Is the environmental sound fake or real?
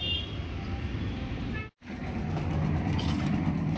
real